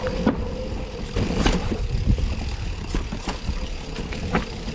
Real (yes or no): no